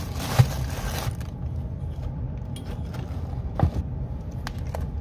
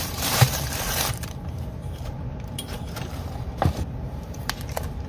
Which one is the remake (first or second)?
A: second